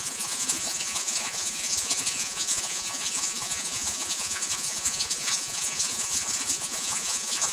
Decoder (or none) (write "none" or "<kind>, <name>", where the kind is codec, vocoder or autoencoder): vocoder, Vocos